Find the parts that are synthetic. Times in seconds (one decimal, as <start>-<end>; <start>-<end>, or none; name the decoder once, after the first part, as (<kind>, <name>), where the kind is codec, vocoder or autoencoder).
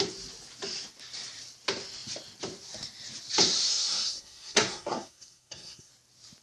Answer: 3.7-5.9 (codec, SNAC)